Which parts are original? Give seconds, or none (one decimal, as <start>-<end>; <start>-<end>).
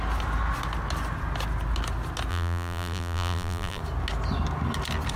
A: 0.0-2.3; 3.8-5.2